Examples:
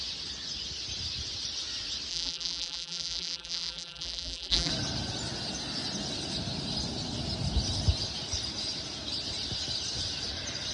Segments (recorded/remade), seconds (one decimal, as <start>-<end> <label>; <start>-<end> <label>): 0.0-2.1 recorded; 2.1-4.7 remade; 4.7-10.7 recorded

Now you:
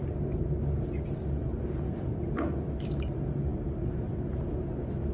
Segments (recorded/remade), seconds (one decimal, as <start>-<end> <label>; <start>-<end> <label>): 0.0-5.1 recorded

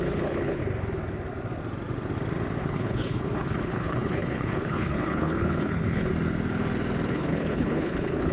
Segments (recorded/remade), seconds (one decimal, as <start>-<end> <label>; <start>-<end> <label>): 0.0-0.6 remade; 0.6-2.6 recorded; 2.6-6.1 remade; 6.1-7.1 recorded; 7.1-8.3 remade

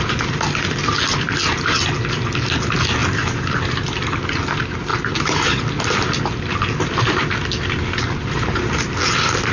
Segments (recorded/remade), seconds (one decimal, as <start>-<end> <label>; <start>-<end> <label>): 0.0-4.9 recorded; 4.9-5.6 remade; 5.6-9.5 recorded

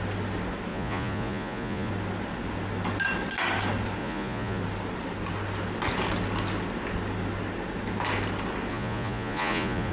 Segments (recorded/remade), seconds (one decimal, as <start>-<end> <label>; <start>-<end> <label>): 0.0-0.7 recorded; 0.7-1.9 remade; 1.9-4.0 recorded; 4.0-4.6 remade; 4.6-8.7 recorded; 8.7-9.9 remade

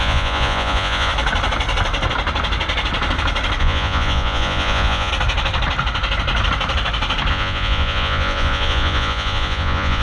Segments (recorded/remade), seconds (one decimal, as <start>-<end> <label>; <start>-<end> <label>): 0.0-1.1 remade; 1.1-3.6 recorded; 3.6-5.1 remade; 5.1-7.3 recorded; 7.3-10.0 remade